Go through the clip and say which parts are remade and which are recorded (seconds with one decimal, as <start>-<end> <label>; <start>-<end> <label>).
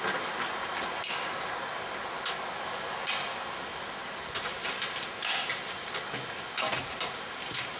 0.0-6.8 recorded; 6.8-7.8 remade